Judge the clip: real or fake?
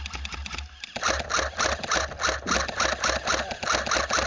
real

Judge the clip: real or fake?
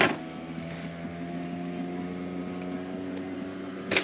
real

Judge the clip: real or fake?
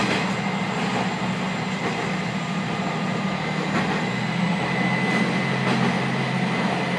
real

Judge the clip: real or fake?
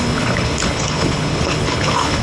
fake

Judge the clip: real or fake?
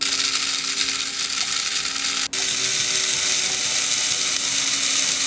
real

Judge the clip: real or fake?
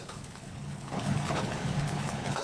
fake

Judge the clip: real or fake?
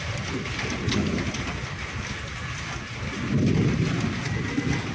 real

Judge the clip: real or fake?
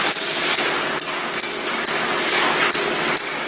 real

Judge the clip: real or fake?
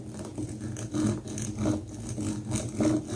real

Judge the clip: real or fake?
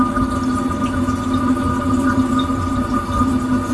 real